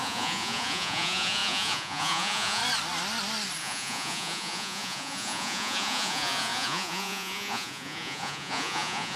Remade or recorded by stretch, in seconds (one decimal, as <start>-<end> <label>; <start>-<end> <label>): 0.0-2.6 remade; 2.6-3.6 recorded; 3.6-9.2 remade